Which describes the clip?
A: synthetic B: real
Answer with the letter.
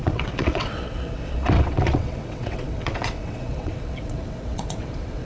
A